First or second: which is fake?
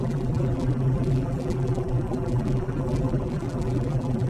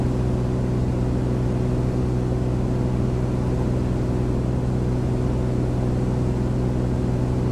first